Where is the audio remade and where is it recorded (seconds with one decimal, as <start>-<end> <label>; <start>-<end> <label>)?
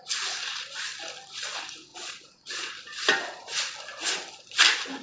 0.0-1.9 recorded; 1.9-2.7 remade; 2.7-5.0 recorded